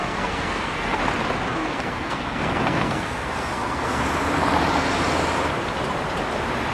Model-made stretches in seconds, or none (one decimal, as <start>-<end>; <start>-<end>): 0.0-1.0; 1.5-4.0